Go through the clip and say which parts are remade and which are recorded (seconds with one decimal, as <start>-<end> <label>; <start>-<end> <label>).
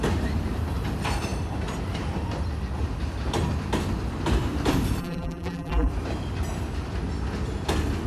0.0-5.0 recorded; 5.0-5.9 remade; 5.9-8.1 recorded